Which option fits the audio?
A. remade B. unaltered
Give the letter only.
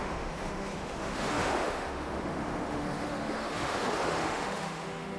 A